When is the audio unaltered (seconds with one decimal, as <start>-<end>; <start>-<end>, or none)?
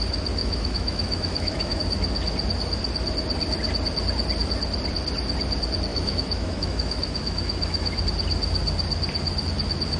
0.0-0.4; 1.8-5.9; 8.0-10.0